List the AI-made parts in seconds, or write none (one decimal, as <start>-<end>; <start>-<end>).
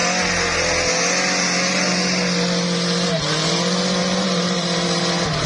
4.0-5.0